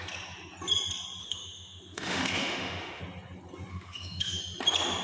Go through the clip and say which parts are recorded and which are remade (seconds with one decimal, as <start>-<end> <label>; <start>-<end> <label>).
0.0-1.2 recorded; 1.2-3.0 remade; 3.0-3.7 recorded; 3.7-4.4 remade; 4.4-5.0 recorded